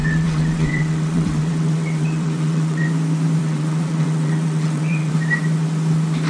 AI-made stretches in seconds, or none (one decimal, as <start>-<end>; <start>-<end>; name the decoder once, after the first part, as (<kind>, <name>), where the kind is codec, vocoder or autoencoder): 0.0-2.9 (vocoder, WaveNeXt); 3.4-5.1